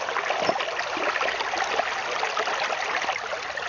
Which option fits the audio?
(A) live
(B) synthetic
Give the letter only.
A